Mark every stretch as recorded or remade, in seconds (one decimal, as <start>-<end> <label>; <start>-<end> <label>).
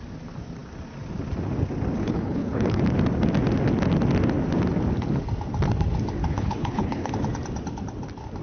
0.0-2.0 recorded; 2.0-2.8 remade; 2.8-6.2 recorded; 6.2-7.1 remade; 7.1-8.4 recorded